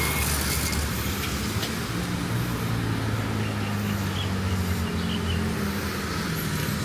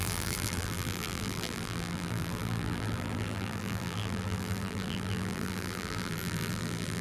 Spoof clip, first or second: second